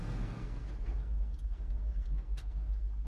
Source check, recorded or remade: remade